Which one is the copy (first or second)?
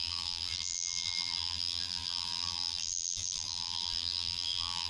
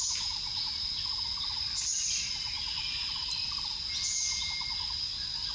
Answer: first